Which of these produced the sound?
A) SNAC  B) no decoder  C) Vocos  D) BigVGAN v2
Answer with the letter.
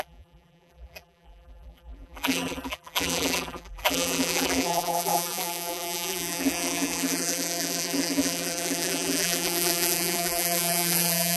D